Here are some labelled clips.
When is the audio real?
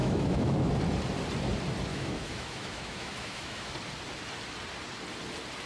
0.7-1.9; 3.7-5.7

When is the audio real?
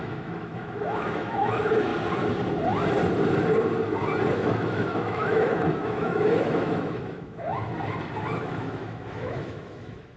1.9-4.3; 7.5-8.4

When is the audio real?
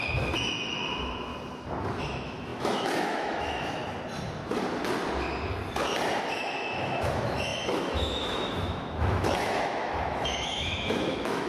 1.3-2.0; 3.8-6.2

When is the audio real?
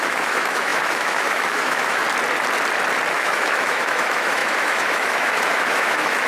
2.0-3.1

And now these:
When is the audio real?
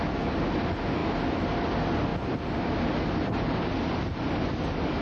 0.0-5.0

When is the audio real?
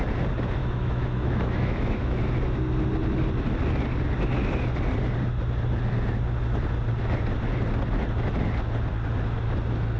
0.0-0.6; 2.2-10.0